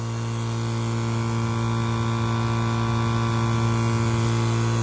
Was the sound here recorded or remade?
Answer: recorded